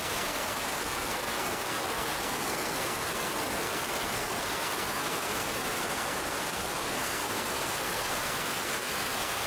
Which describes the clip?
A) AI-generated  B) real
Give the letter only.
A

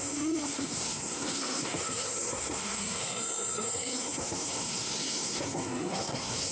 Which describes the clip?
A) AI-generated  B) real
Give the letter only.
A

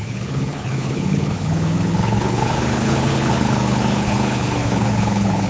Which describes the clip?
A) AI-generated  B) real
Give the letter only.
A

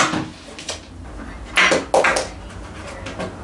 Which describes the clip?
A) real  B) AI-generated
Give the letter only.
A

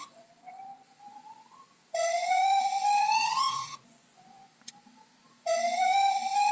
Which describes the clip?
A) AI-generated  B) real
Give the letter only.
A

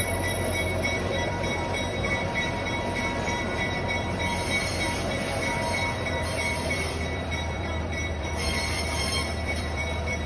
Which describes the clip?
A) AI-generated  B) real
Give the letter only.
A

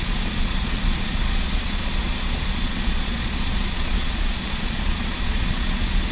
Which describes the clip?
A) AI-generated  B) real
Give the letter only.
A